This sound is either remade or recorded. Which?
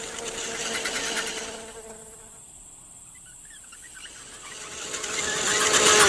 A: recorded